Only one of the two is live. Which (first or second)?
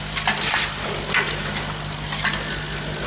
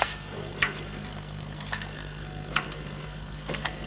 first